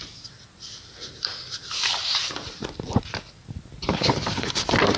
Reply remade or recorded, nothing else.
recorded